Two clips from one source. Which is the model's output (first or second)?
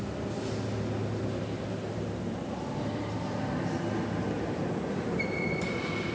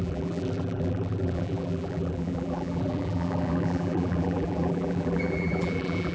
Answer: second